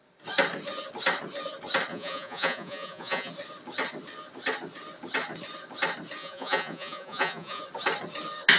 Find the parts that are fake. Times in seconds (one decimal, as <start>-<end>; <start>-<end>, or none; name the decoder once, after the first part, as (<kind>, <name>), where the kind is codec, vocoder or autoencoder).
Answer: 1.9-3.3 (vocoder, Vocos); 6.2-7.6